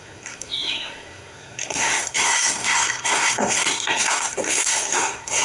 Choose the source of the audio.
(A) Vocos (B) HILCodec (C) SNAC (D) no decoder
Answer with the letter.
C